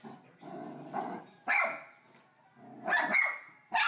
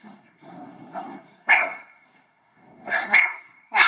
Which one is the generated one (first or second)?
second